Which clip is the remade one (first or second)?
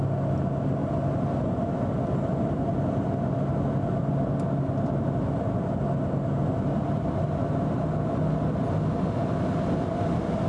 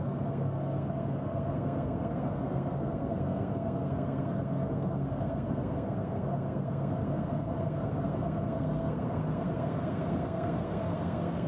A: second